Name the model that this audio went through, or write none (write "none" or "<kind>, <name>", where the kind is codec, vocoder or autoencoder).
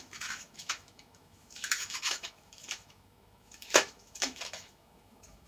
autoencoder, DAC-VAE